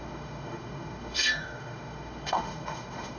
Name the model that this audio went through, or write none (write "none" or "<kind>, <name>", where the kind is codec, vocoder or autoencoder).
autoencoder, DAC-VAE